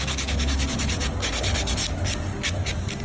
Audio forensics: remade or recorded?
recorded